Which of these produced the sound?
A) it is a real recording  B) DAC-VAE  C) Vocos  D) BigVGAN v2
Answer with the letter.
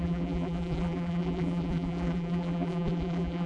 D